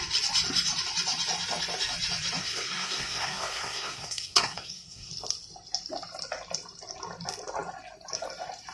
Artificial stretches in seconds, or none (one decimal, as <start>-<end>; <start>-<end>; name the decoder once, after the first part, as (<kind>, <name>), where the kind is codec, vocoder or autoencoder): 2.4-5.1 (codec, SNAC)